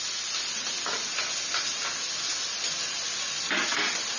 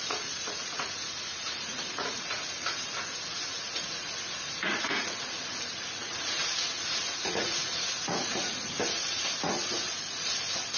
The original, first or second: first